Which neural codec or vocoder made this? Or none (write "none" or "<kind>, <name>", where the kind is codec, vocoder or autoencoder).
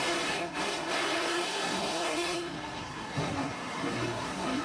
codec, SNAC